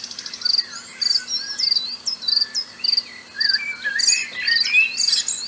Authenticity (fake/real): real